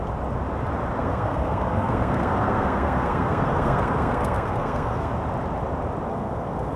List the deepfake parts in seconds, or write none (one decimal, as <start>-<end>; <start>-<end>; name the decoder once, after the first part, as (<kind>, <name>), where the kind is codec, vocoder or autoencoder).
1.0-5.1 (codec, SNAC); 6.1-6.8